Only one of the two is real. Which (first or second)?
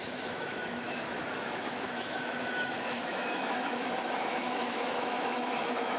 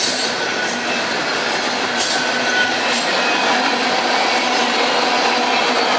second